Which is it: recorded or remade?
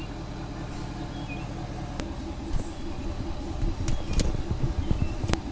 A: recorded